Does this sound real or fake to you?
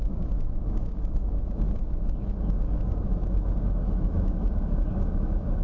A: fake